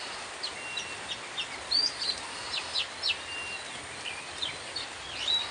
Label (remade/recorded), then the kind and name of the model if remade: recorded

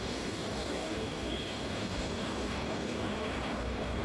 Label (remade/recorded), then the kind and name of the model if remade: remade, codec, DAC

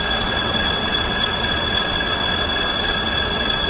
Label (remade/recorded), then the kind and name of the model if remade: remade, vocoder, WaveNeXt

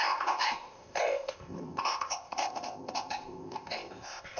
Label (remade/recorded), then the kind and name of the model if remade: remade, codec, ZipCodec